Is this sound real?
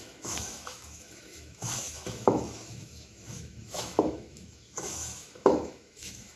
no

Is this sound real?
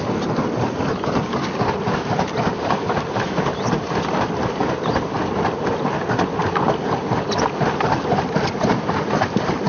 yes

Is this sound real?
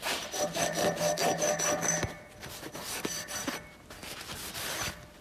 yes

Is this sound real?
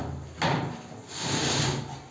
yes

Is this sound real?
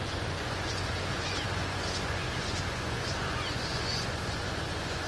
no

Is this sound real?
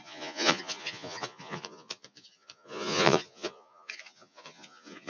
no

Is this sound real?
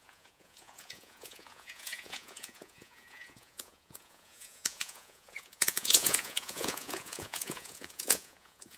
no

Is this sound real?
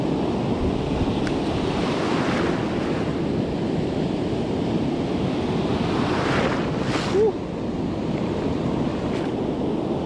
yes